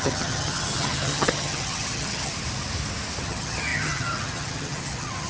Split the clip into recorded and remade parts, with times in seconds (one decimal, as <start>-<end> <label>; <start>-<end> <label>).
0.0-2.3 remade; 2.3-3.2 recorded; 3.2-5.3 remade